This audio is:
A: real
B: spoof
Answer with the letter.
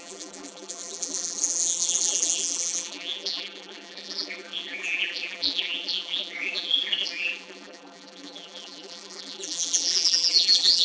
B